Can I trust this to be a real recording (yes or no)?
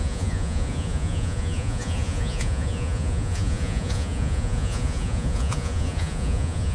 no